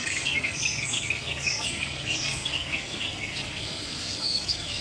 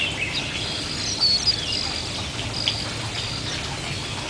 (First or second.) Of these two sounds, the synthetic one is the first